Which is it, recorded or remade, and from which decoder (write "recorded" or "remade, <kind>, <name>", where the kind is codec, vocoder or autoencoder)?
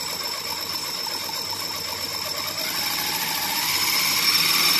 recorded